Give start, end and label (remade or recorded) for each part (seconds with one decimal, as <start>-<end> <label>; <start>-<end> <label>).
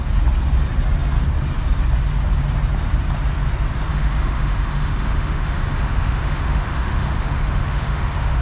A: 0.0-3.9 recorded; 3.9-8.4 remade